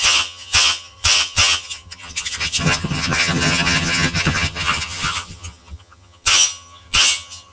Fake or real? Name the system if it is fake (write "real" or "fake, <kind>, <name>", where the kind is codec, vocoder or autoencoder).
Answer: fake, vocoder, HiFi-GAN